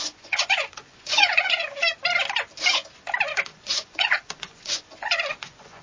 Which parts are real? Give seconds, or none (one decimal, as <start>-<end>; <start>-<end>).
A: 1.8-3.5